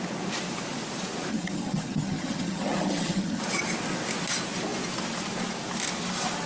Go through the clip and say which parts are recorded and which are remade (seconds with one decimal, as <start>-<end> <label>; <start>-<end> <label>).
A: 0.0-1.3 recorded; 1.3-3.4 remade; 3.4-6.5 recorded